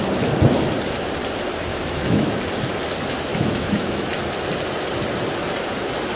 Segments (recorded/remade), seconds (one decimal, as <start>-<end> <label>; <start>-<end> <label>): 0.0-1.7 recorded; 1.7-2.3 remade; 2.3-3.3 recorded; 3.3-4.1 remade; 4.1-6.2 recorded